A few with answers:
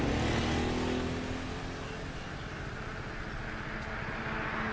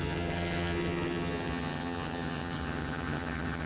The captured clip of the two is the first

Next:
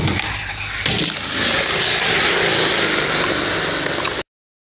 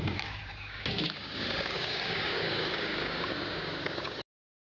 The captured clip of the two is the first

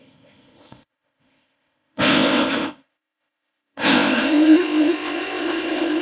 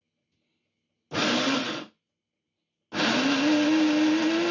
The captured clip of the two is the second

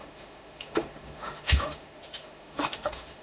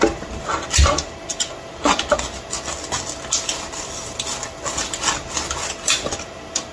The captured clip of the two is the second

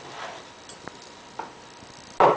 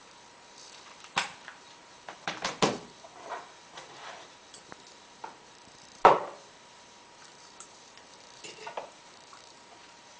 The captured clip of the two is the first